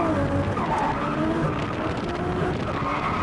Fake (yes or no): no